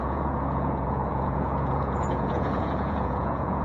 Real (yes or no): no